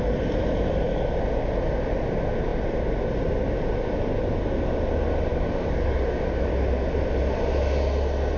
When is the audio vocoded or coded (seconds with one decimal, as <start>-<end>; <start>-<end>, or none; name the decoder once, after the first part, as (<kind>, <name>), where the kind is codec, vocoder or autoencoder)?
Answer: 5.3-6.5 (codec, DAC)